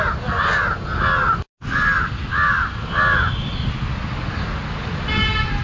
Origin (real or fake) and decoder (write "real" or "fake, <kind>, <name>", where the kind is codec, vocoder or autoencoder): real